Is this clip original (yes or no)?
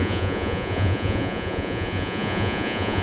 no